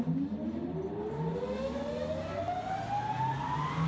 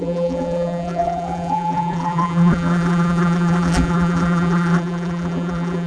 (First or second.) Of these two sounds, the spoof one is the second